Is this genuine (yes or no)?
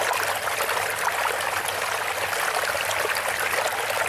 yes